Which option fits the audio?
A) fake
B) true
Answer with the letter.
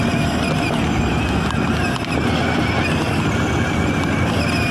B